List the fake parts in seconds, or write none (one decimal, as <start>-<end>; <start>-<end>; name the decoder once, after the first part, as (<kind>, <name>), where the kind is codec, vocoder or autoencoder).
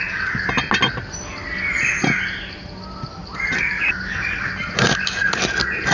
none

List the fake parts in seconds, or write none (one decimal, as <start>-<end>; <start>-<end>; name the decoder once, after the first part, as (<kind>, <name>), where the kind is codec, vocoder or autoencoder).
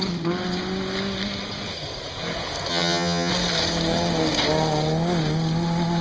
2.7-3.3 (vocoder, HiFi-GAN)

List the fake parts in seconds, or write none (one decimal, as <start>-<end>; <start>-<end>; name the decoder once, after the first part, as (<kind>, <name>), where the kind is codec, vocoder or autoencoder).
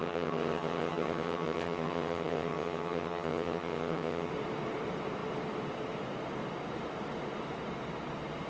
0.0-4.3 (vocoder, HiFi-GAN)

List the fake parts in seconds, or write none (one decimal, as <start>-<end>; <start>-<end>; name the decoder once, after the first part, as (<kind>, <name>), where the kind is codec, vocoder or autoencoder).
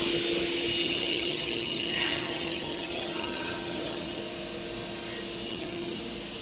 0.8-4.2 (vocoder, HiFi-GAN); 5.5-6.0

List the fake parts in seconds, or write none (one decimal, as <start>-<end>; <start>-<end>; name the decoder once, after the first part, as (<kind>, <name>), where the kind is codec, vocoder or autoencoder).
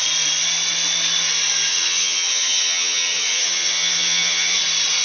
1.7-4.6 (vocoder, HiFi-GAN)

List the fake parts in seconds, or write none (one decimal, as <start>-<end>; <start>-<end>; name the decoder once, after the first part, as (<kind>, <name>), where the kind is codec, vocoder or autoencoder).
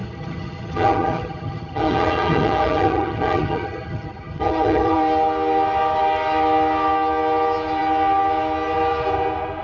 0.0-5.0 (vocoder, HiFi-GAN)